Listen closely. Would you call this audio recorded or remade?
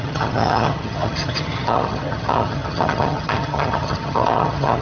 remade